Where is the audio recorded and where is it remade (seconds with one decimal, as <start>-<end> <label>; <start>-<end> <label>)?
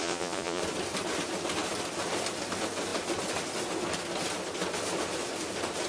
0.0-0.6 remade; 0.6-5.9 recorded